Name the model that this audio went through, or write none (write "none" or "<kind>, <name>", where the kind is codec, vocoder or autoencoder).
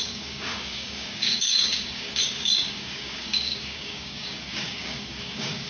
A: codec, DAC